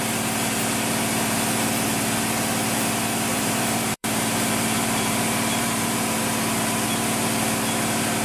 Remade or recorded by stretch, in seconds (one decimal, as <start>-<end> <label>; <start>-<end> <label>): 0.0-3.3 recorded; 3.3-6.2 remade; 6.2-8.2 recorded

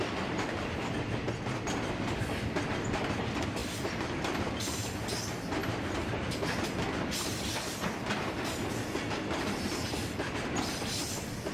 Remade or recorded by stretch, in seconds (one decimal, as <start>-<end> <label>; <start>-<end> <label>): 0.0-3.6 recorded; 3.6-5.1 remade; 5.1-11.5 recorded

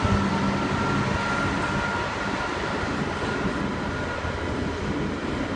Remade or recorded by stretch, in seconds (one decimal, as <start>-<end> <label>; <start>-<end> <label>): 0.0-5.6 recorded